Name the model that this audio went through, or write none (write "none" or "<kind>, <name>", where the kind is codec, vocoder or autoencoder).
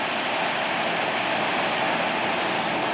none